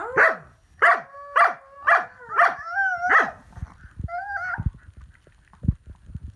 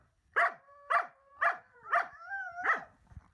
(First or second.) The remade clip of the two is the second